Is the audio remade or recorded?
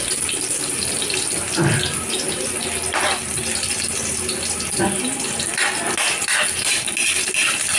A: recorded